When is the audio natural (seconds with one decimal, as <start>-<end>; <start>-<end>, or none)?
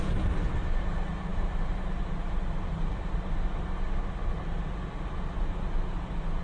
0.0-6.4